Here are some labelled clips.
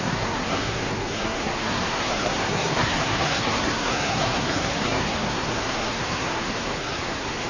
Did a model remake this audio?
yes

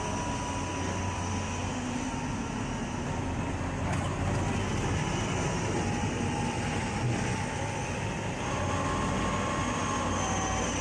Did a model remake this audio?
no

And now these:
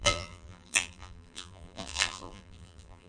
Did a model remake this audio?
yes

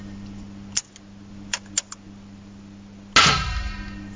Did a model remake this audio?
no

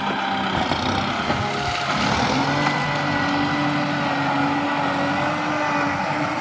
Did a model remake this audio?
no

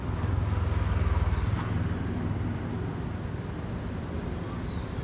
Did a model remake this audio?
no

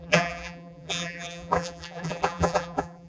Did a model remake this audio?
yes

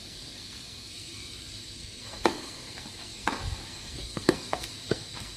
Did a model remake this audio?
yes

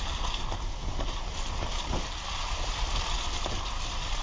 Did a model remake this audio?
no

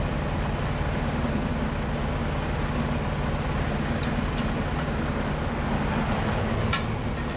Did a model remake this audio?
no